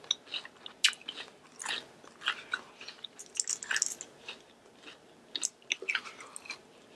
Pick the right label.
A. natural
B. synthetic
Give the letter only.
A